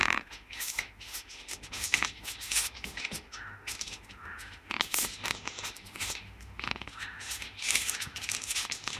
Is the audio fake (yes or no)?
yes